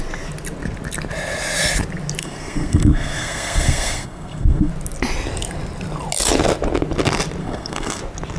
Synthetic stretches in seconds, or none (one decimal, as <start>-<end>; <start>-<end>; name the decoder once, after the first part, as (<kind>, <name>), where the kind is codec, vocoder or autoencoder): 2.2-4.7 (codec, SNAC); 7.4-8.0